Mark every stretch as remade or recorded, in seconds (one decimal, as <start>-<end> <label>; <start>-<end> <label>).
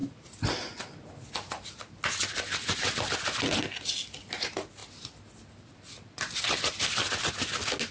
0.0-7.9 recorded